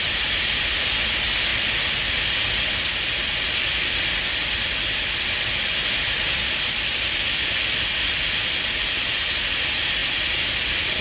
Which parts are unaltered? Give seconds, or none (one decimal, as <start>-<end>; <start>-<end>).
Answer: 0.0-11.0

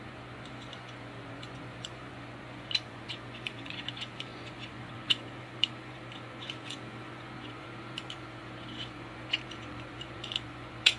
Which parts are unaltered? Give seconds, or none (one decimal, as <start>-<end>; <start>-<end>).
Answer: none

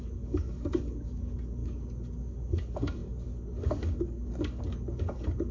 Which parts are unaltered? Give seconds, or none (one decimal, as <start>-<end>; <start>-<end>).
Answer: none

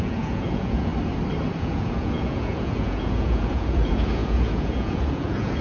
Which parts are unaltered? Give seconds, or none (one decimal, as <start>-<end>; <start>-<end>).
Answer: 0.9-1.6